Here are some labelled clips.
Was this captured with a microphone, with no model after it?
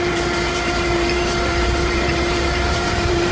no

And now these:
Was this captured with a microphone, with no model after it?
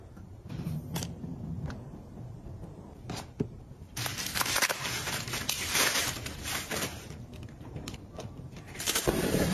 no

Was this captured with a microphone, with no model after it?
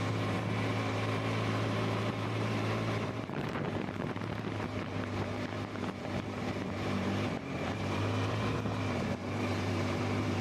no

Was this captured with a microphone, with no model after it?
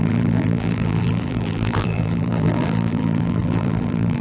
no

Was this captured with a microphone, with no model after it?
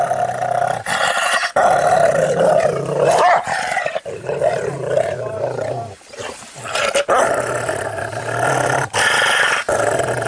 no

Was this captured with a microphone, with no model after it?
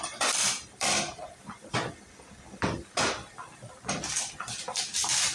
no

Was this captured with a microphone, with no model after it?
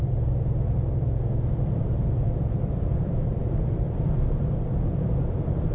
no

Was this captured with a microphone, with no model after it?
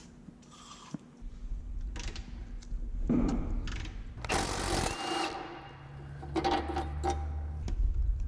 yes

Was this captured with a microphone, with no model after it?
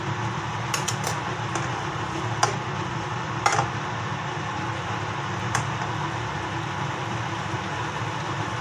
no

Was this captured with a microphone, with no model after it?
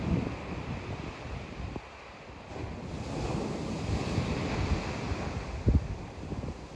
no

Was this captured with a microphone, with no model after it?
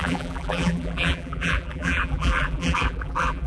no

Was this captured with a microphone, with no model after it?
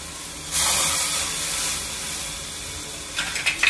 yes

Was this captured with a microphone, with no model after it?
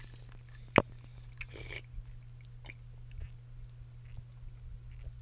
yes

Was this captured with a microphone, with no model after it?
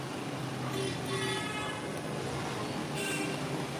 yes